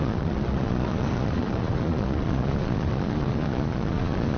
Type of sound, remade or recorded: remade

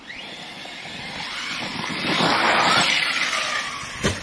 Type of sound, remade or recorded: recorded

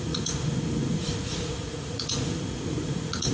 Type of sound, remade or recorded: remade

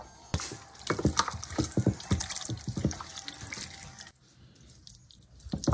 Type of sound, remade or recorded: recorded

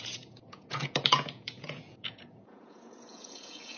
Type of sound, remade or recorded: remade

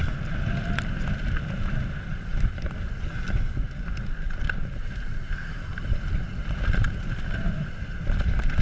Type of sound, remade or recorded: recorded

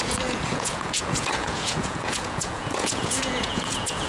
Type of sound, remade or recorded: remade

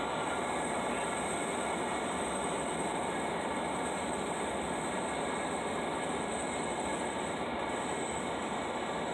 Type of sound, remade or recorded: recorded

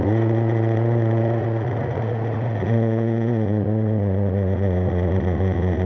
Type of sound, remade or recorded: remade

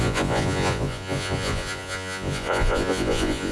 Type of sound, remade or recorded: remade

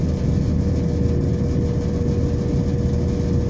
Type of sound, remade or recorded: recorded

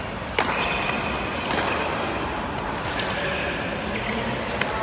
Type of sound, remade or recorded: recorded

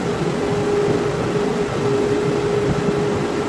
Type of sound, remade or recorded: recorded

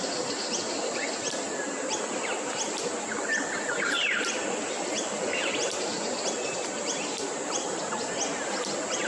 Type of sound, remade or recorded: recorded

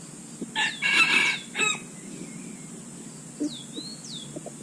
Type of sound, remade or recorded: recorded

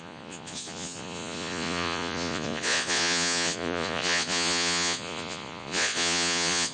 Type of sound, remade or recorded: remade